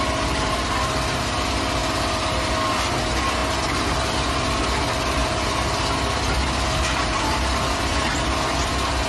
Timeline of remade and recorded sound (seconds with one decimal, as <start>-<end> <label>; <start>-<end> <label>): 0.0-9.1 recorded

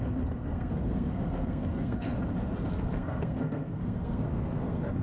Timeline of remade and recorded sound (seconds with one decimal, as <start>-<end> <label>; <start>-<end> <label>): 0.0-2.1 remade; 2.1-2.7 recorded; 2.7-5.0 remade

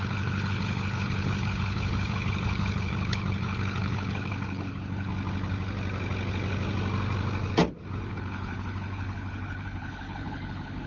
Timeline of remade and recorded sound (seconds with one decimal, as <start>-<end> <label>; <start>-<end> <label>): 0.0-5.1 remade; 5.1-8.1 recorded; 8.1-10.9 remade

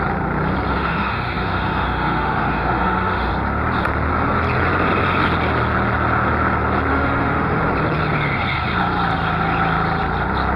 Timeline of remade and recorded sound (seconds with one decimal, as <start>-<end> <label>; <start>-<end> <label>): 0.0-0.7 recorded; 0.7-3.3 remade; 3.3-6.9 recorded; 6.9-7.6 remade; 7.6-10.6 recorded

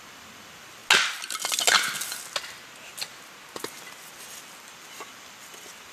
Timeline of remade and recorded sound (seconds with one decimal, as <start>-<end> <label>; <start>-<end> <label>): 0.0-0.8 remade; 0.8-4.3 recorded; 4.3-5.9 remade

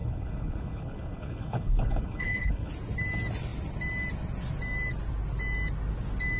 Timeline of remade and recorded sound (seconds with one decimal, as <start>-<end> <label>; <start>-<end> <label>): 0.0-2.7 remade; 2.7-6.4 recorded